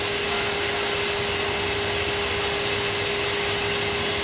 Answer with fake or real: real